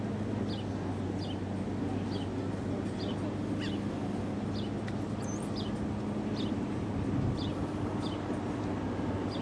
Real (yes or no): yes